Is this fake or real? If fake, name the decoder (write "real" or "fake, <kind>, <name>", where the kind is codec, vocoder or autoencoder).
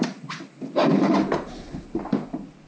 real